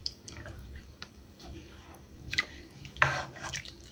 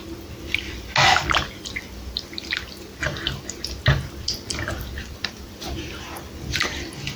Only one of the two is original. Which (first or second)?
second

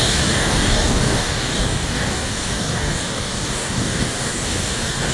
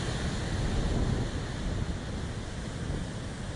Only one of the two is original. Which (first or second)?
second